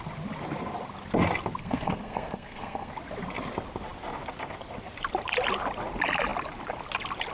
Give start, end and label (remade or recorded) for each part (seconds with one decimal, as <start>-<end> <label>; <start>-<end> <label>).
0.0-1.6 recorded; 1.6-2.9 remade; 2.9-7.3 recorded